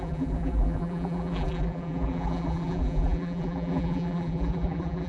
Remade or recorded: remade